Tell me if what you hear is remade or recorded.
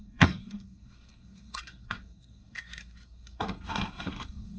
remade